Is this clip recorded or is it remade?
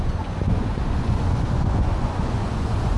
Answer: remade